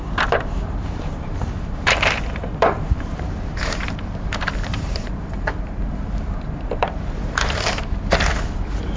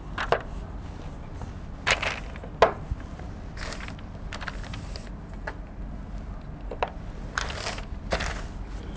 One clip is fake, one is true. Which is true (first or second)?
second